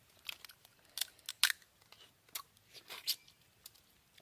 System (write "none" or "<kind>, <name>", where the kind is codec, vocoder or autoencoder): none